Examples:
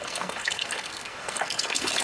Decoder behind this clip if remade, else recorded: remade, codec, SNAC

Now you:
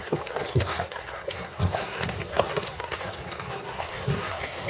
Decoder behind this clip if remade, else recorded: remade, codec, SNAC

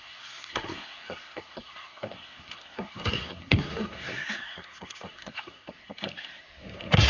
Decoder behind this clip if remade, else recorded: remade, codec, SNAC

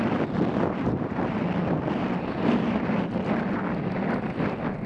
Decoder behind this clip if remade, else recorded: remade, vocoder, BigVGAN v2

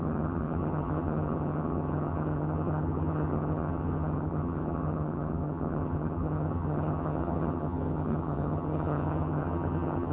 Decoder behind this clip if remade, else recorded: remade, vocoder, HiFi-GAN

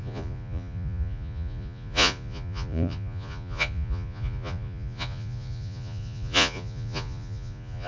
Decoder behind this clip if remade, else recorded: remade, vocoder, Vocos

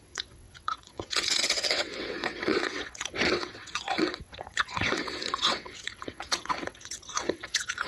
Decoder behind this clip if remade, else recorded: remade, vocoder, WaveNeXt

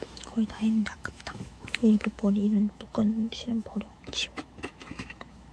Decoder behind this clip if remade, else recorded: remade, autoencoder, DAC-VAE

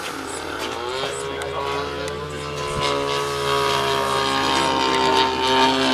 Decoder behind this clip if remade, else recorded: recorded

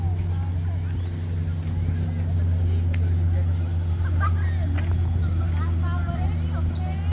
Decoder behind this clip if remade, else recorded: recorded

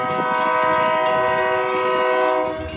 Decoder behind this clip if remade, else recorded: recorded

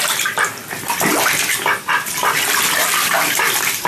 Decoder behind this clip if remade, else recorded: remade, vocoder, BigVGAN v2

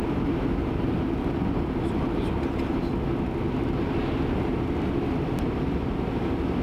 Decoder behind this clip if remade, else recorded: recorded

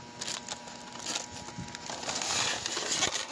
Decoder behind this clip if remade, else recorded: recorded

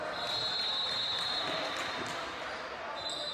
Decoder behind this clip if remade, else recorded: recorded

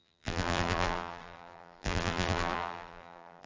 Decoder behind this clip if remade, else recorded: remade, vocoder, BigVGAN v2